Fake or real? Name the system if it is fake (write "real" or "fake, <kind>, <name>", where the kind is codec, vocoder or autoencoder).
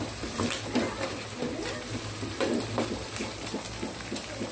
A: real